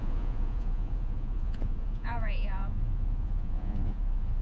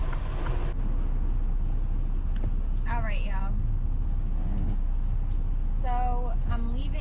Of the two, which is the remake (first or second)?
first